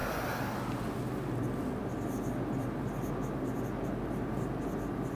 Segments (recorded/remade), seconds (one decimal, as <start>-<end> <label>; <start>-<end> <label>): 0.0-5.1 recorded